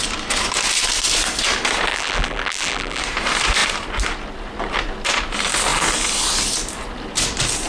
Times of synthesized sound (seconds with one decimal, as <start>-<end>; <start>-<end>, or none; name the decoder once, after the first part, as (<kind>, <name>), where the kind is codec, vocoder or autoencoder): 1.9-3.0 (vocoder, BigVGAN v2)